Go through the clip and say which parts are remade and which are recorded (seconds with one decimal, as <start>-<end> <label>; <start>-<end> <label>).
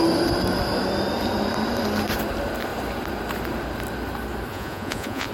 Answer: 0.0-4.5 recorded; 4.5-5.3 remade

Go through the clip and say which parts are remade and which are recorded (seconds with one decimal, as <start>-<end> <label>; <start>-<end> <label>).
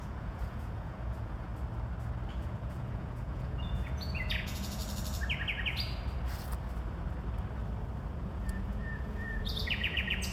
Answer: 0.0-1.5 remade; 1.5-2.3 recorded; 2.3-4.8 remade; 4.8-8.1 recorded; 8.1-10.3 remade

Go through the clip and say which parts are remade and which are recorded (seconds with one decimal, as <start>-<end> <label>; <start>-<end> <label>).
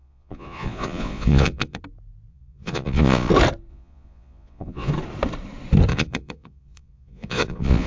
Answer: 0.0-1.8 remade; 1.8-2.3 recorded; 2.3-3.3 remade; 3.3-3.7 recorded; 3.7-4.9 remade; 4.9-5.9 recorded; 5.9-7.9 remade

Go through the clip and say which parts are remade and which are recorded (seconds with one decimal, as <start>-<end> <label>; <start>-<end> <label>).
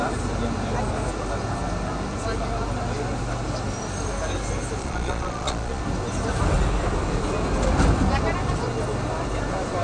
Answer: 0.0-4.8 recorded; 4.8-5.8 remade; 5.8-9.8 recorded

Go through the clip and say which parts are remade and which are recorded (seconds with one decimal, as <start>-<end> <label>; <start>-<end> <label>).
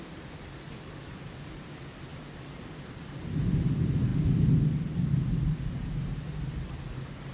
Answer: 0.0-7.3 recorded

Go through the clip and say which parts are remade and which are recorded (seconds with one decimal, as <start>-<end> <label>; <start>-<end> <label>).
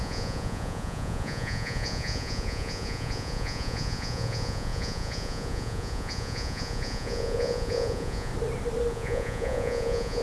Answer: 0.0-8.3 remade; 8.3-8.9 recorded; 8.9-10.2 remade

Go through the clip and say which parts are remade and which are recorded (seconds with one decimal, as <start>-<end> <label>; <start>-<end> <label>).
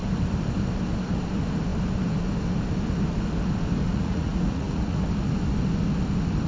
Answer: 0.0-3.8 recorded; 3.8-5.0 remade; 5.0-6.5 recorded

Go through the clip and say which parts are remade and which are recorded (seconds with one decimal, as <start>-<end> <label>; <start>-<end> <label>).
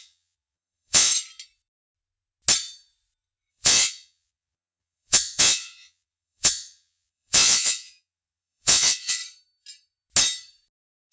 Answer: 0.0-1.1 remade; 1.1-3.5 recorded; 3.5-9.2 remade; 9.2-11.1 recorded